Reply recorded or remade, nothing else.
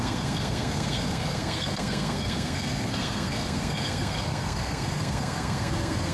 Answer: remade